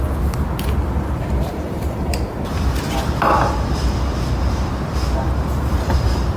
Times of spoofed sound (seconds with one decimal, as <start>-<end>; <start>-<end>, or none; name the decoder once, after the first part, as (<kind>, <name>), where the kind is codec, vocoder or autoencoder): 1.5-2.3 (vocoder, BigVGAN v2)